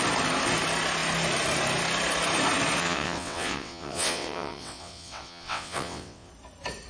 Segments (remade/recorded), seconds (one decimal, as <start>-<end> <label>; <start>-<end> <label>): 0.0-2.8 recorded; 2.8-6.3 remade; 6.3-6.9 recorded